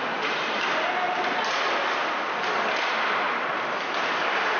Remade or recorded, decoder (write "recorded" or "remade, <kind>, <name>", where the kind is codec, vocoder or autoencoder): recorded